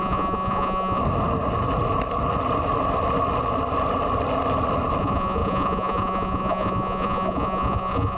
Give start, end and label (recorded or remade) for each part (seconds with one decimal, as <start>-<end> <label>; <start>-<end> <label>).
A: 0.0-1.0 remade; 1.0-5.0 recorded; 5.0-8.2 remade